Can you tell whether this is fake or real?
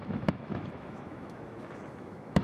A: fake